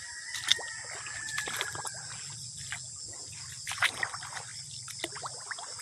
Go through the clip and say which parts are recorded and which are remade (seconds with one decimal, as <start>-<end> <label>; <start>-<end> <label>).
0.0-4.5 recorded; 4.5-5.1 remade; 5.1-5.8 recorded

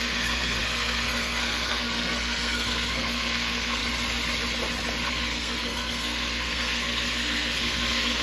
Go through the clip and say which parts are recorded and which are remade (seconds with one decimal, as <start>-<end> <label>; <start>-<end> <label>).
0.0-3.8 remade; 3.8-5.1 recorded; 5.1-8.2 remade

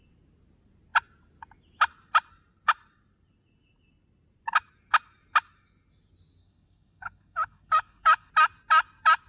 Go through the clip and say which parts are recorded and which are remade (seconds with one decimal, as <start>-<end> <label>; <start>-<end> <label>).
0.0-6.4 recorded; 6.4-8.3 remade; 8.3-9.3 recorded

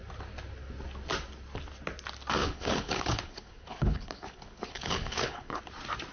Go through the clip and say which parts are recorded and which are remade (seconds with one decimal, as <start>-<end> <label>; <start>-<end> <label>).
0.0-2.4 recorded; 2.4-5.6 remade; 5.6-6.1 recorded

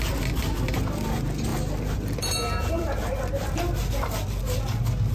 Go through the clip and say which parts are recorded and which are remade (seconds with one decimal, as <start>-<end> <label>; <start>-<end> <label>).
0.0-1.5 recorded; 1.5-3.8 remade; 3.8-5.1 recorded

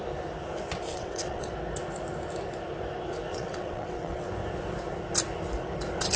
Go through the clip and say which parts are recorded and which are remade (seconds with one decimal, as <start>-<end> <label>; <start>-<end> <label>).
0.0-0.9 recorded; 0.9-1.5 remade; 1.5-3.3 recorded; 3.3-4.3 remade; 4.3-6.2 recorded